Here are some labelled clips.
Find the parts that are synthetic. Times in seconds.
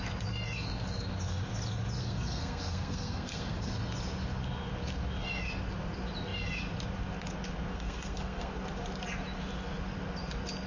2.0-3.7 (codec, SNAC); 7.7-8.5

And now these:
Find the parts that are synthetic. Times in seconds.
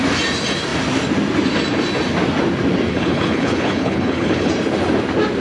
2.9-4.5 (codec, HILCodec)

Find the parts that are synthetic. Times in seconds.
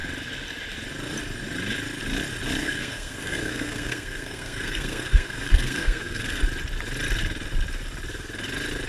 2.6-6.4 (codec, SNAC)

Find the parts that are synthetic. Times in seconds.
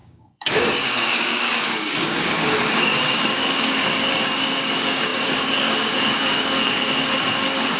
0.0-7.8 (codec, DAC)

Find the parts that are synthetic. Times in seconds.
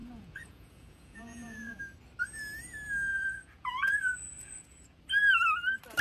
0.0-1.8 (vocoder, Vocos); 3.1-5.0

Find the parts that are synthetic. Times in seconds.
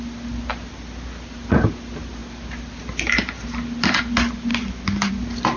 none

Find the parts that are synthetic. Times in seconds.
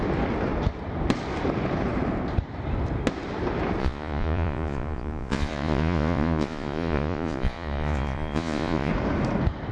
3.8-8.9 (vocoder, Vocos)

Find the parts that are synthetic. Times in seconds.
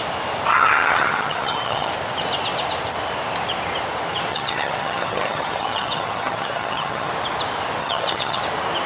0.5-1.9 (vocoder, HiFi-GAN); 4.3-7.1; 7.8-8.4